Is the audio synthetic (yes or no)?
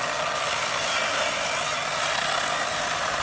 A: no